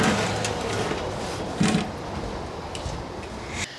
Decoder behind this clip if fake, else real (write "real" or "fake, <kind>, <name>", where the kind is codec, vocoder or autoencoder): real